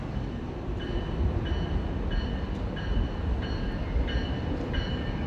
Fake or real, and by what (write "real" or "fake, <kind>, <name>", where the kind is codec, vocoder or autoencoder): real